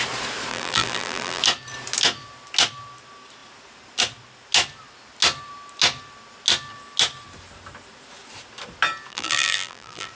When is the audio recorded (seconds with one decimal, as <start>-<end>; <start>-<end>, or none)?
0.0-0.5; 1.4-9.1